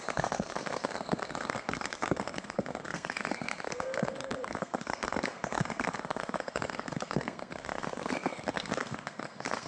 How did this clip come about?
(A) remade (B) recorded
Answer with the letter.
A